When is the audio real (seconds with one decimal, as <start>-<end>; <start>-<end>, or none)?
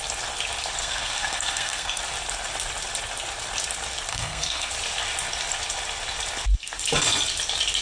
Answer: 0.0-0.8; 2.0-4.1; 4.7-7.8